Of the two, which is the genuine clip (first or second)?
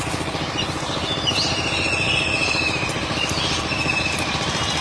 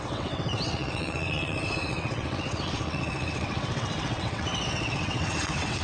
first